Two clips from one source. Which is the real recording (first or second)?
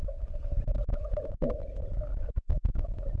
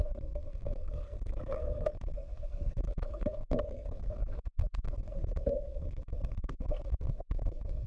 first